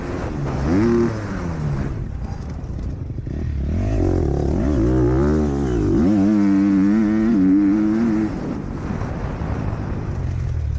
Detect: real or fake real